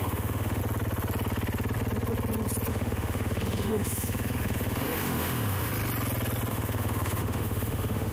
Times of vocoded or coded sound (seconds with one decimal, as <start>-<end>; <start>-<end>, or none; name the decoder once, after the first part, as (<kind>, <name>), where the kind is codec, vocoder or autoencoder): 0.0-0.6 (autoencoder, DAC-VAE); 2.7-5.7; 6.5-8.1